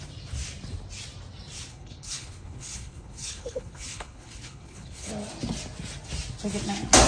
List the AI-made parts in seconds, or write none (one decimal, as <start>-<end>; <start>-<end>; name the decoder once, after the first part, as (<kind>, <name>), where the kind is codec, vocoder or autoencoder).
1.7-5.1 (codec, HILCodec)